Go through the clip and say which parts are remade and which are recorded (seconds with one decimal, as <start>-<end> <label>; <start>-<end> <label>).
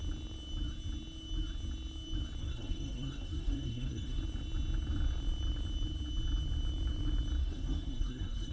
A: 0.0-2.4 recorded; 2.4-4.2 remade; 4.2-7.4 recorded; 7.4-8.5 remade